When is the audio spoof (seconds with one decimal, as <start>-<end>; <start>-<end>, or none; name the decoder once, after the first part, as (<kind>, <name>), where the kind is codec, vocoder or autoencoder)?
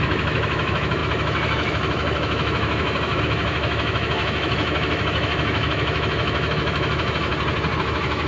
0.0-7.3 (autoencoder, DAC-VAE); 7.8-8.3